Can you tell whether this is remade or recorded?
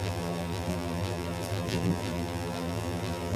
remade